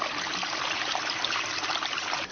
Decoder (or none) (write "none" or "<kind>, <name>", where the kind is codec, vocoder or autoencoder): none